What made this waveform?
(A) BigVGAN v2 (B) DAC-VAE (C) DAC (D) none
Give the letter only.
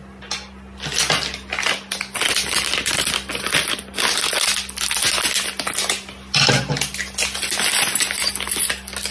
D